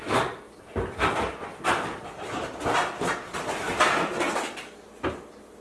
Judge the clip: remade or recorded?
recorded